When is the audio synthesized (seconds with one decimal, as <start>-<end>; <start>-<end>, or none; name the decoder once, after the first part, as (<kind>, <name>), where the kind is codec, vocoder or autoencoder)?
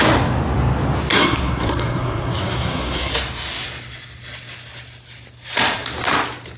1.1-3.1 (codec, SNAC)